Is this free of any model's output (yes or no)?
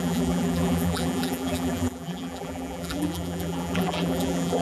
no